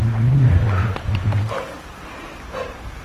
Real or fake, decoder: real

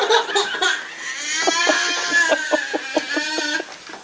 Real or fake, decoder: fake, vocoder, BigVGAN v2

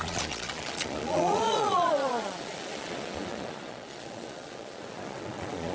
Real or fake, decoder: fake, vocoder, Vocos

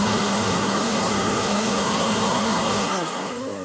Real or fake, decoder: fake, codec, SNAC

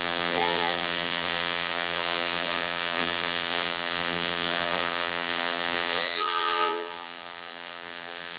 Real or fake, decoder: fake, vocoder, BigVGAN v2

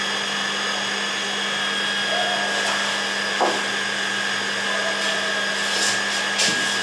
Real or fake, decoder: real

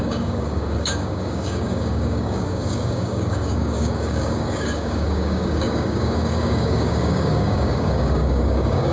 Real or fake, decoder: fake, codec, DAC